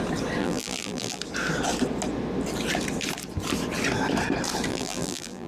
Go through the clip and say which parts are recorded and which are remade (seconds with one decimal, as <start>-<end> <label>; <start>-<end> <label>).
0.0-0.4 recorded; 0.4-1.2 remade; 1.2-4.7 recorded; 4.7-5.5 remade